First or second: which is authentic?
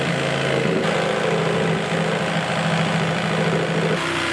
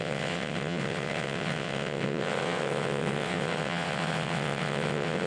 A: first